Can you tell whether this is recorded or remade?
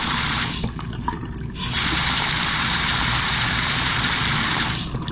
remade